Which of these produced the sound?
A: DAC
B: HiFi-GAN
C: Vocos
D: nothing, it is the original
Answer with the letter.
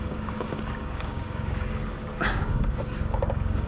A